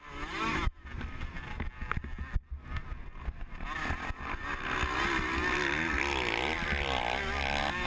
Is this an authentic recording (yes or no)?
yes